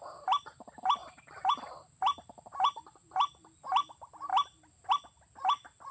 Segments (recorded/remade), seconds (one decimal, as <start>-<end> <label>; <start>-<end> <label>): 0.0-1.0 recorded; 1.0-2.8 remade; 2.8-4.3 recorded; 4.3-4.9 remade; 4.9-5.9 recorded